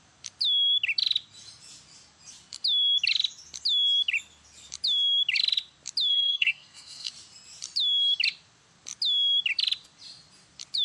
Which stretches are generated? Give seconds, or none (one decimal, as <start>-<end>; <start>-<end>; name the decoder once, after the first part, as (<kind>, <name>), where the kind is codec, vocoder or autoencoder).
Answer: 6.1-7.1 (codec, SNAC)